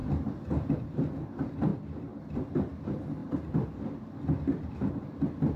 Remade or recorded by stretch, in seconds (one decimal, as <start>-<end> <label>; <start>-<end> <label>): 0.0-0.7 recorded; 0.7-5.6 remade